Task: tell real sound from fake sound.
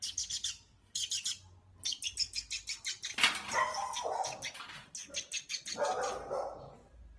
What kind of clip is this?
real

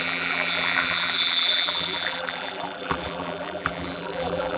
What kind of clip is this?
fake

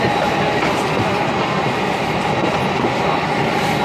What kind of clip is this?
real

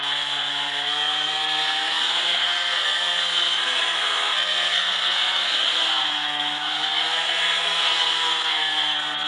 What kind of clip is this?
fake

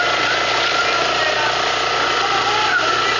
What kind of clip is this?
real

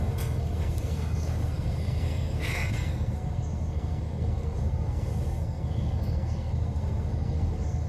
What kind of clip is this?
fake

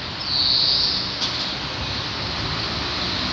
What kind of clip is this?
real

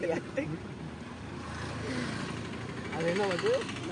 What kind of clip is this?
real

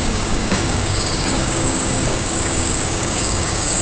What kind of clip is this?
fake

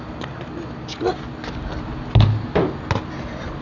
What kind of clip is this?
real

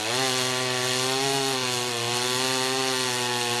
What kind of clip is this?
real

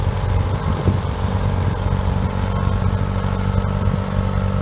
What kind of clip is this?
real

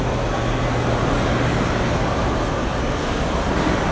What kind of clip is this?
real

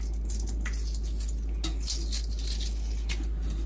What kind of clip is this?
real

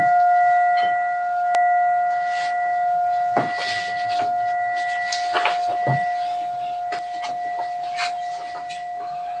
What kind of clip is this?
real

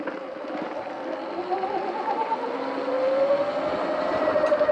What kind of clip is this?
real